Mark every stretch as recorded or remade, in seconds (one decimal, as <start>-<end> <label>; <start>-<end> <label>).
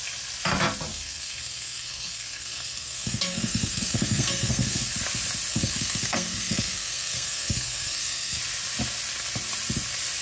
0.0-0.9 recorded; 0.9-4.9 remade; 4.9-5.5 recorded; 5.5-8.4 remade; 8.4-10.2 recorded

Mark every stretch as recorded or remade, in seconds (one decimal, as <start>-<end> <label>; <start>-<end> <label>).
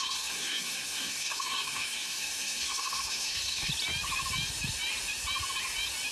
0.0-3.7 remade; 3.7-6.1 recorded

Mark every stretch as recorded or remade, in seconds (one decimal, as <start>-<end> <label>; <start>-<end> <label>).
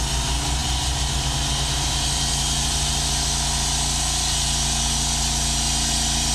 0.0-6.3 recorded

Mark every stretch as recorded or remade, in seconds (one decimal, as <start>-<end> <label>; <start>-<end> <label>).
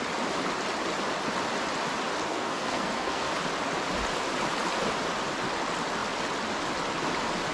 0.0-2.3 recorded; 2.3-3.3 remade; 3.3-7.5 recorded